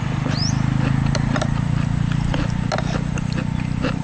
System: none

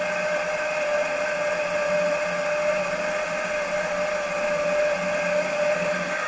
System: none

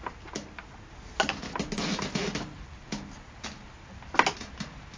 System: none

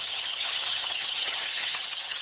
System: vocoder, HiFi-GAN